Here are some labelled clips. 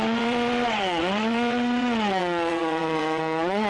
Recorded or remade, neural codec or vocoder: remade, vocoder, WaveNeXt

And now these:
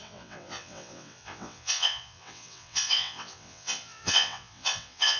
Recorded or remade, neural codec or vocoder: remade, vocoder, WaveNeXt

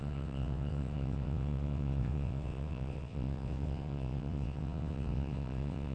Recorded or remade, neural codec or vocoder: remade, vocoder, WaveNeXt